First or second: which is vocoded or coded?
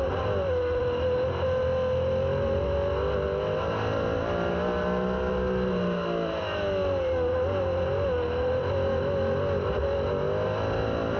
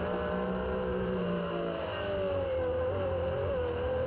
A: second